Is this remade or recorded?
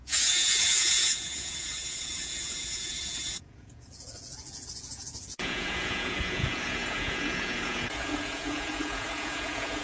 remade